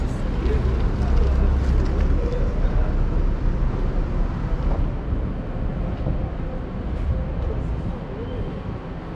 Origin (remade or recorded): recorded